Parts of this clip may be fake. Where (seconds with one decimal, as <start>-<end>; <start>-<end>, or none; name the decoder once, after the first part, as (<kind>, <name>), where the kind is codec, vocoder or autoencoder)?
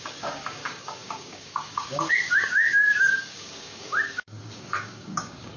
0.0-5.6 (codec, DAC)